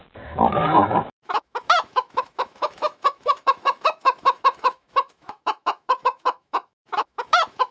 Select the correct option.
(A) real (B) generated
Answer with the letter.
B